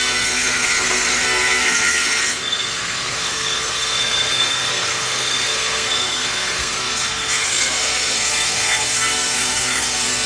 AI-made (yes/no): yes